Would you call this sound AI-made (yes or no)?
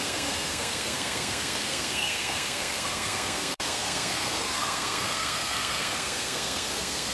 yes